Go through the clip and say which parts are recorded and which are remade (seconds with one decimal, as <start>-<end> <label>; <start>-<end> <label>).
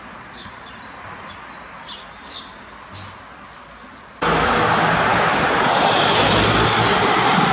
0.0-7.5 recorded